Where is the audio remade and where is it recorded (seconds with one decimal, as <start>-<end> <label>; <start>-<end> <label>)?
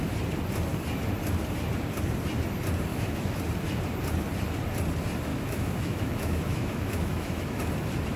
0.0-2.9 recorded; 2.9-3.4 remade; 3.4-5.3 recorded; 5.3-7.6 remade; 7.6-8.2 recorded